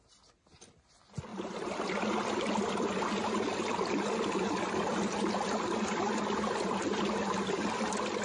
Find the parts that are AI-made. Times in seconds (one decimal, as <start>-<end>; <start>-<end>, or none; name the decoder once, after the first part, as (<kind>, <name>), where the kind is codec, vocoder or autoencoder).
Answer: none